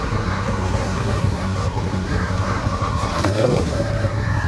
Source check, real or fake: fake